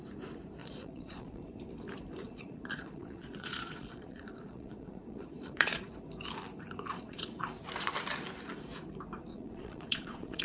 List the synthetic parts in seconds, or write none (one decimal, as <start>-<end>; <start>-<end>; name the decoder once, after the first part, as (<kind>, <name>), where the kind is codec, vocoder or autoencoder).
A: 0.6-1.4 (vocoder, Vocos); 2.2-5.9; 6.9-7.5; 9.3-10.4